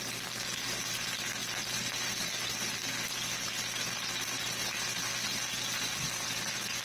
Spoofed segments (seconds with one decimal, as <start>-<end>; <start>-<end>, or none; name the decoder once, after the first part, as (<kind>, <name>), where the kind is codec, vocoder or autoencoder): none